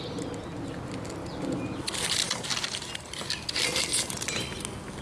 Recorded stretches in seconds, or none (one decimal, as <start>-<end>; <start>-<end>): 0.0-5.0

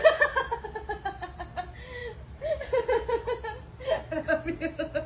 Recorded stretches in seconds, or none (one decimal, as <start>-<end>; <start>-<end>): 0.0-2.0; 2.8-5.1

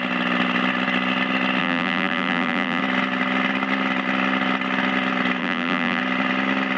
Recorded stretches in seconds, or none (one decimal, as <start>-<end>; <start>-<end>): 0.0-1.6; 2.8-5.4; 6.0-6.8

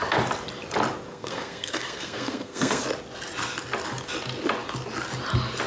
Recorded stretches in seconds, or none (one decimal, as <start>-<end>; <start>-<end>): 0.0-1.1; 2.8-5.7

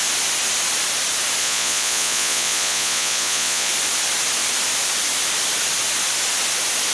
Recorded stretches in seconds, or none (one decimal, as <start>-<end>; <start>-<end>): 0.0-1.4; 3.7-6.9

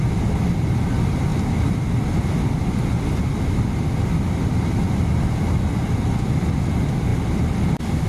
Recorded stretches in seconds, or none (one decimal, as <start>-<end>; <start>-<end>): 0.0-8.1

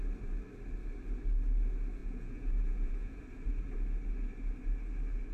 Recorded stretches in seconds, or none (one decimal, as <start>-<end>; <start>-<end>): 0.0-2.0; 3.2-5.3